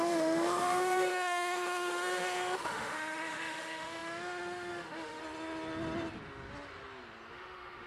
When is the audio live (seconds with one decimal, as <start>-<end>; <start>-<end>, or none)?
5.2-7.3